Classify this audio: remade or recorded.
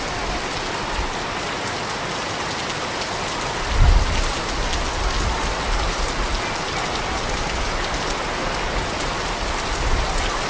recorded